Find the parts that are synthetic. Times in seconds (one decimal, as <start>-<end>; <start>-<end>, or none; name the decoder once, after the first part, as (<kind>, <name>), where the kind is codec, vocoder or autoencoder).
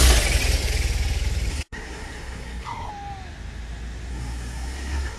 1.5-2.9 (codec, SNAC); 4.1-5.2